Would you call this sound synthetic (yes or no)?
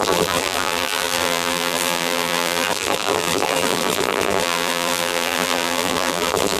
yes